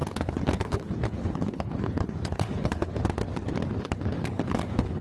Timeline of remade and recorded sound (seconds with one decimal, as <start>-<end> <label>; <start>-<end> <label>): 0.0-2.9 remade; 2.9-3.8 recorded; 3.8-5.0 remade